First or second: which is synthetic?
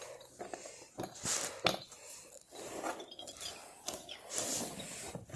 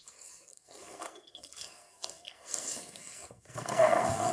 second